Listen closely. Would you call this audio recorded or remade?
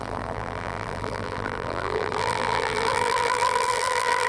remade